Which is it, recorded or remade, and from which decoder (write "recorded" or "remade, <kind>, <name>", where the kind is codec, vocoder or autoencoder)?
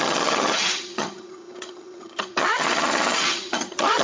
remade, vocoder, HiFi-GAN